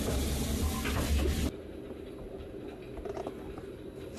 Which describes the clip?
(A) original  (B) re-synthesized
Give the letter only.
A